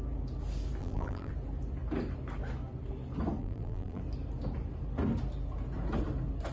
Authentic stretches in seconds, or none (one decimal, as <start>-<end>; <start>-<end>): 0.0-0.8; 1.3-3.4; 4.0-6.5